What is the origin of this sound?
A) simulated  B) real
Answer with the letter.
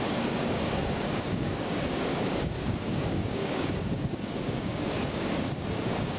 A